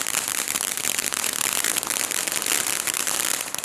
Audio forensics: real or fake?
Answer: real